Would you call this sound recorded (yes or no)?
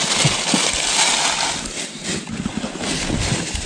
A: yes